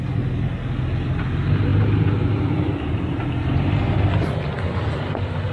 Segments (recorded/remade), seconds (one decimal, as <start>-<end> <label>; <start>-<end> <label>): 0.0-5.5 recorded